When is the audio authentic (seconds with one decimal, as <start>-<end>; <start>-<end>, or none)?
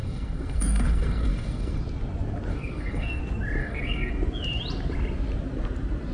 1.8-2.5; 3.2-3.6; 4.1-6.1